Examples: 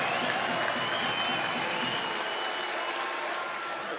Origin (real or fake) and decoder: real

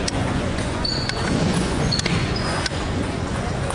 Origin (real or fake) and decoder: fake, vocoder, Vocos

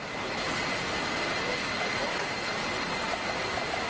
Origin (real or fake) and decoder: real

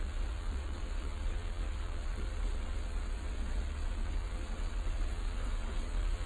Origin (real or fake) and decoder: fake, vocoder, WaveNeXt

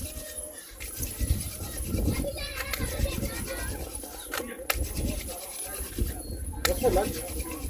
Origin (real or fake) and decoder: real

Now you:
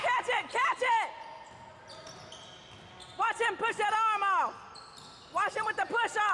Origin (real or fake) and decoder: real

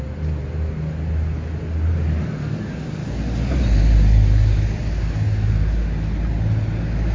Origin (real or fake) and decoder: real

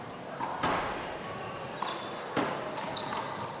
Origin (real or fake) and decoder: real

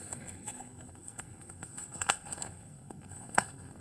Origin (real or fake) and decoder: fake, codec, SNAC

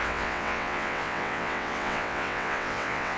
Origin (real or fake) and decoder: fake, vocoder, WaveNeXt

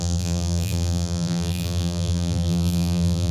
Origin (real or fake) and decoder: fake, vocoder, BigVGAN v2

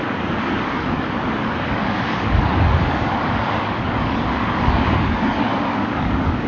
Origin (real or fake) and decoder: fake, codec, DAC